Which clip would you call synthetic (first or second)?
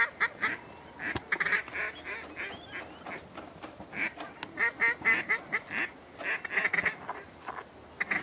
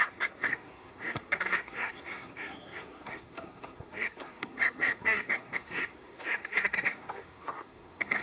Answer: second